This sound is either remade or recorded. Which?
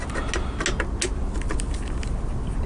recorded